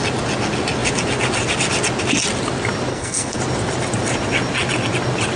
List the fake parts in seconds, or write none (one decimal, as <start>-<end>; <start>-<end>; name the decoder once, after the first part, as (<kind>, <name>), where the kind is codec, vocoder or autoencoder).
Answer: 2.9-3.4 (codec, SNAC)